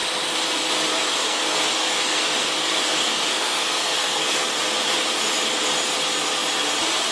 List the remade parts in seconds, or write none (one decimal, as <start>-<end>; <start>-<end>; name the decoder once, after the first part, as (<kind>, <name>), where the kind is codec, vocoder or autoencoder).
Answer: 1.1-4.5 (codec, SNAC)